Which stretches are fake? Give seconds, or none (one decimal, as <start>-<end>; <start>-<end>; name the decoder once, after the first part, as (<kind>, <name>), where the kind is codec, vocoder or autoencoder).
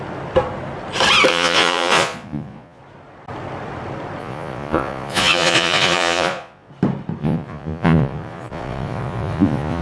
1.3-2.8 (vocoder, Vocos); 4.2-6.7; 7.2-9.8